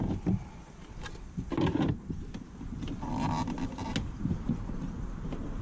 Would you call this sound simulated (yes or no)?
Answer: no